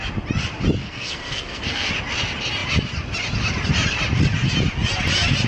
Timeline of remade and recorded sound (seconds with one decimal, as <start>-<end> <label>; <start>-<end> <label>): 0.0-0.8 recorded; 0.8-1.9 remade; 1.9-5.5 recorded